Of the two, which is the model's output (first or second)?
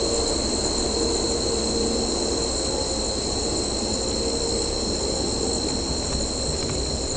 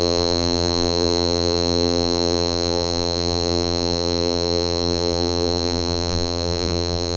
second